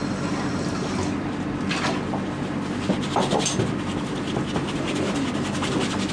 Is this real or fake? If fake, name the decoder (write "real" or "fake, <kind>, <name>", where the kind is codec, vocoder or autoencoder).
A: real